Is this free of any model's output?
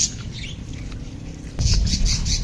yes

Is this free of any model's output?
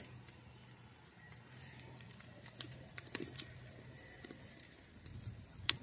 no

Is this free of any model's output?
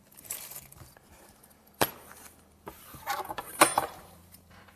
no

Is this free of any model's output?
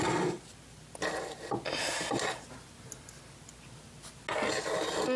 yes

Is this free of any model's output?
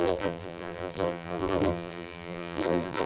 no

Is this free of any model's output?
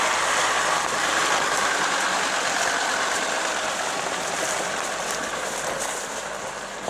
no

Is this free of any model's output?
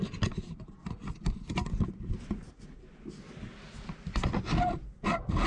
yes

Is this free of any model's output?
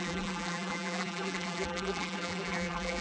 no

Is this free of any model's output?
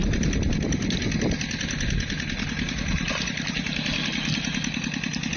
yes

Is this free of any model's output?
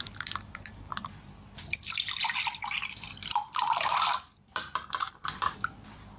no